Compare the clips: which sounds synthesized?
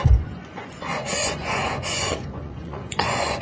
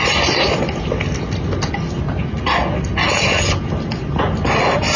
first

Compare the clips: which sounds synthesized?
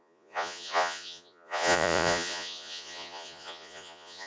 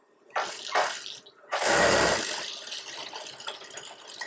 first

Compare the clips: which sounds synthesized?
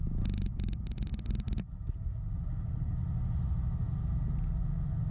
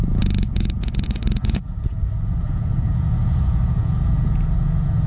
second